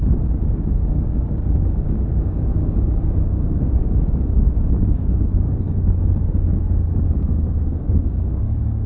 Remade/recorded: remade